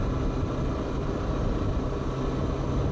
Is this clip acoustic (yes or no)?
yes